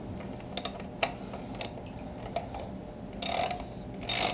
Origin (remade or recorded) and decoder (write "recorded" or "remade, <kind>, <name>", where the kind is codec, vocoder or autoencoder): recorded